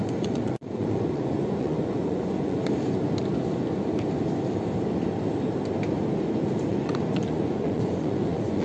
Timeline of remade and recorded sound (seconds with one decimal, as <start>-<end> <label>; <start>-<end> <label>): 0.0-2.6 remade; 2.6-6.7 recorded; 6.7-8.6 remade